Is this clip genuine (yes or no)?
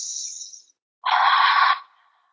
yes